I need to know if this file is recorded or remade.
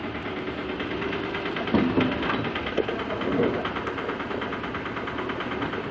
recorded